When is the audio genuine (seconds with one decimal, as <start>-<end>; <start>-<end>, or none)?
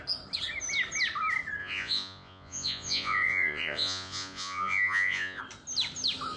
0.0-1.6; 5.4-6.4